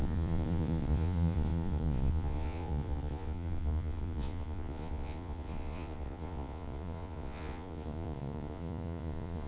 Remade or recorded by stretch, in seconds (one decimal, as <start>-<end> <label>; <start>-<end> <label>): 0.0-9.5 remade